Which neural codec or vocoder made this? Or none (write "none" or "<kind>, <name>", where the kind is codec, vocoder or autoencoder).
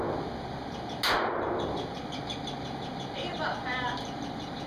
none